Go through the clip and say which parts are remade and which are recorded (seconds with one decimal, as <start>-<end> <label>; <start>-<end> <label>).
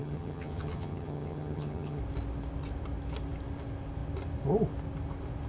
0.0-2.0 remade; 2.0-5.5 recorded